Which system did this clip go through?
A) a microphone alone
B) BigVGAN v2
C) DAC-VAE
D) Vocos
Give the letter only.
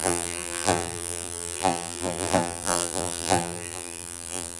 B